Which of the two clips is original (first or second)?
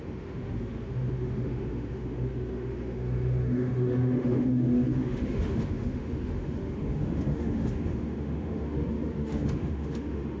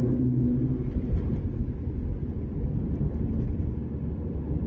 second